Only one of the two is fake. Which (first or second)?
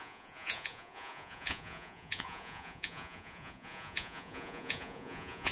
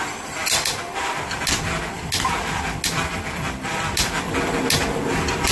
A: first